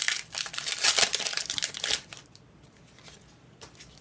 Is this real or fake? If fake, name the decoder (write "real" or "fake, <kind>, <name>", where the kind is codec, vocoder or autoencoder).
real